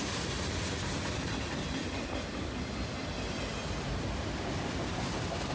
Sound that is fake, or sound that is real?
real